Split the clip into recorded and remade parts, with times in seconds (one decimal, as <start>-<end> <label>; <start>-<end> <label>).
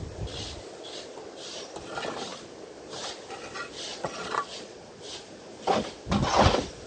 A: 0.0-3.9 recorded; 3.9-4.8 remade; 4.8-6.9 recorded